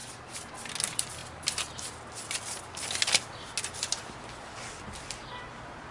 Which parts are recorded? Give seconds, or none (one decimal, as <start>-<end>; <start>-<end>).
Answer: 0.0-5.9